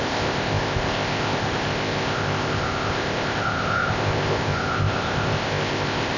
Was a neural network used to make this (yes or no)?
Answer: yes